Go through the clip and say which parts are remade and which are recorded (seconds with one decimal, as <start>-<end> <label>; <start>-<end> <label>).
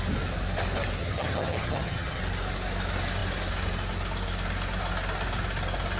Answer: 0.0-1.0 recorded; 1.0-2.2 remade; 2.2-6.0 recorded